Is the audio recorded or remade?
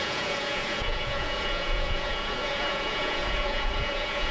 remade